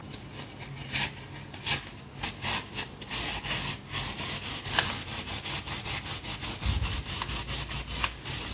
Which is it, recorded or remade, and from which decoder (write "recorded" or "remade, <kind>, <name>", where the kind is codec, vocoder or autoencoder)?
recorded